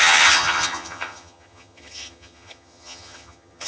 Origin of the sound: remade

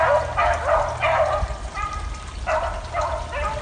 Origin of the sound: recorded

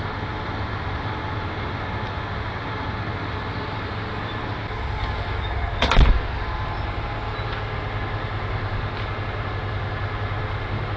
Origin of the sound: recorded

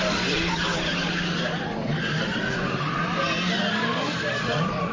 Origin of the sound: recorded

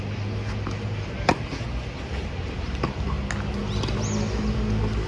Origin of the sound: recorded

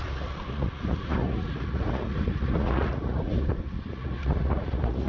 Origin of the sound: remade